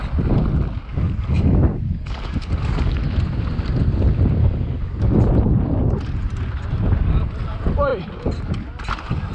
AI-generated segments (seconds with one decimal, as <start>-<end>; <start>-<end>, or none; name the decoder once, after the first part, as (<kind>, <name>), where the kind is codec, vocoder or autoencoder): 0.9-3.0 (codec, DAC); 4.4-5.1